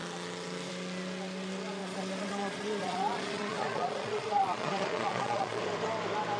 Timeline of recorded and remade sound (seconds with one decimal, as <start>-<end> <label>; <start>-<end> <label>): 0.0-1.8 recorded; 1.8-5.6 remade; 5.6-6.4 recorded